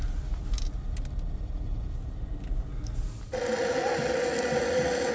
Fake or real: real